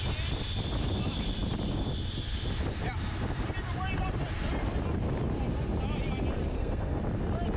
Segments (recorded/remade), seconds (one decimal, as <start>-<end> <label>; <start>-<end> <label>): 0.0-6.5 recorded; 6.5-7.0 remade; 7.0-7.6 recorded